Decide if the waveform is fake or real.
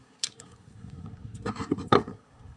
fake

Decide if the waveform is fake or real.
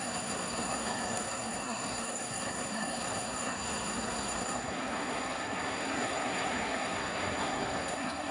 fake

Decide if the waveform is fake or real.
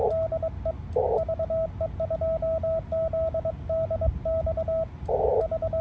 real